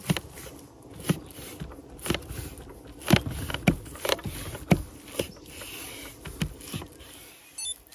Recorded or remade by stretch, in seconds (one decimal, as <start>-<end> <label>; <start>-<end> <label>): 0.0-7.9 recorded